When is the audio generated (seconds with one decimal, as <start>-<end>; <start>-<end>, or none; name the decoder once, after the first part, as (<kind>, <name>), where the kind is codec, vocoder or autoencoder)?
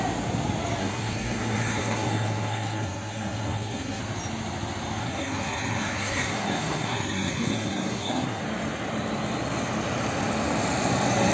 0.8-4.0 (codec, SNAC); 5.0-8.4